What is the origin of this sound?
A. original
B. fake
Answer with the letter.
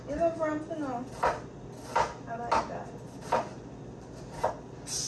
A